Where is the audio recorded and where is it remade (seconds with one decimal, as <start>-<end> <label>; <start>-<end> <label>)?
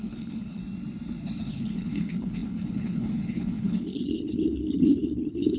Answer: 0.0-0.6 remade; 0.6-1.4 recorded; 1.4-5.6 remade